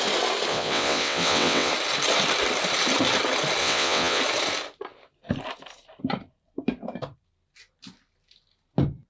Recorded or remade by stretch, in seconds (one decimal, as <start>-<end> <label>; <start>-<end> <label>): 0.0-0.5 recorded; 0.5-1.7 remade; 1.7-3.6 recorded; 3.6-4.2 remade; 4.2-9.1 recorded